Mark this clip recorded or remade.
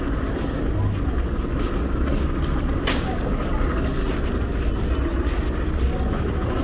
recorded